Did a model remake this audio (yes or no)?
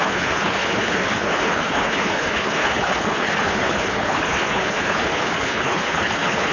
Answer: yes